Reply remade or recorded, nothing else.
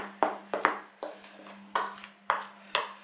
recorded